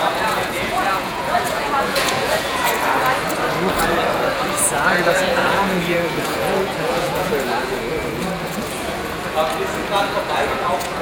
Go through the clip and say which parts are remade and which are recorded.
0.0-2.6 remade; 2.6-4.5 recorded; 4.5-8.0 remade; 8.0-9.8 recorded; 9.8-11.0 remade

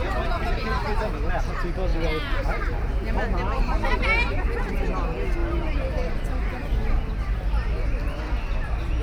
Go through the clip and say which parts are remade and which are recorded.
0.0-0.7 recorded; 0.7-1.3 remade; 1.3-1.9 recorded; 1.9-4.7 remade; 4.7-5.4 recorded; 5.4-6.5 remade; 6.5-9.0 recorded

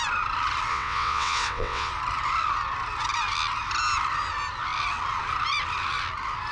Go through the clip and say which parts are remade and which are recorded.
0.0-0.7 recorded; 0.7-1.9 remade; 1.9-6.5 recorded

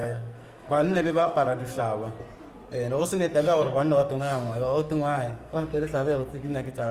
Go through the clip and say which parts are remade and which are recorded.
0.0-1.8 remade; 1.8-3.0 recorded; 3.0-6.9 remade

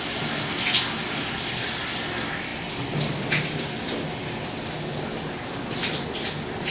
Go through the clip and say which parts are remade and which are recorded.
0.0-6.7 recorded

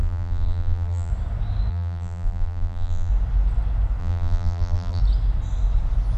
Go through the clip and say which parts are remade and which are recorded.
0.0-1.1 remade; 1.1-1.7 recorded; 1.7-3.1 remade; 3.1-4.0 recorded; 4.0-5.0 remade; 5.0-6.2 recorded

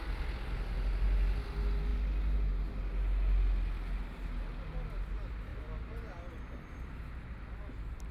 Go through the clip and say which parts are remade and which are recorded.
0.0-8.1 recorded

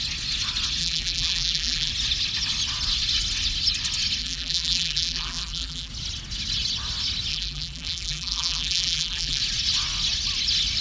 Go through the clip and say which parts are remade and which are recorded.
0.0-0.8 recorded; 0.8-1.9 remade; 1.9-4.2 recorded; 4.2-5.9 remade; 5.9-7.3 recorded; 7.3-9.4 remade; 9.4-10.8 recorded